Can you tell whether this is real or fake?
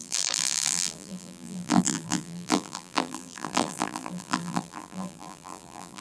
fake